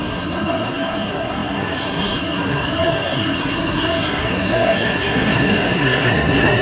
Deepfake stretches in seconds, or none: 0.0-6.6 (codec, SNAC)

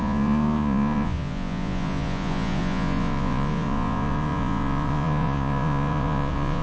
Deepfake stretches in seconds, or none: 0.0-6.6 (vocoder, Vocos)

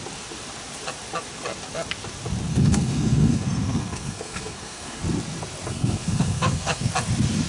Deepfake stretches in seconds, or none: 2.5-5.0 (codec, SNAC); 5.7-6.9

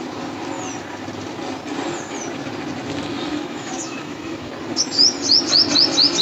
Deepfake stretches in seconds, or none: 3.3-4.5 (autoencoder, DAC-VAE)